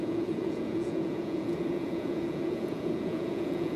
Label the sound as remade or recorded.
remade